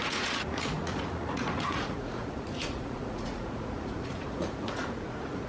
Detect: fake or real fake